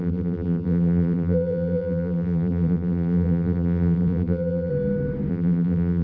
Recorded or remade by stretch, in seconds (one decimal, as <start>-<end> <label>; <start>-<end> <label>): 0.0-4.7 remade; 4.7-5.3 recorded; 5.3-6.0 remade